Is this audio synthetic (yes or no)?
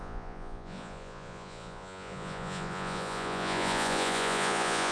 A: yes